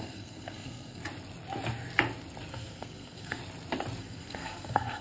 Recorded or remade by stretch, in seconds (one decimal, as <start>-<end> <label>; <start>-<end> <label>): 0.0-1.0 remade; 1.0-2.5 recorded; 2.5-3.4 remade; 3.4-4.0 recorded; 4.0-5.0 remade